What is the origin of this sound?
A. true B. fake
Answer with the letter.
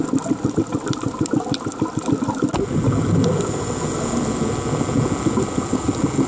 A